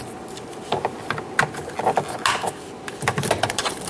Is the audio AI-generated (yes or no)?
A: no